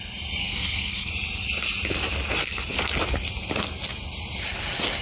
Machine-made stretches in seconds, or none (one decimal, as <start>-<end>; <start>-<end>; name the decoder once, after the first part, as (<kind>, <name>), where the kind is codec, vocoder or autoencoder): 0.4-1.1 (codec, SNAC)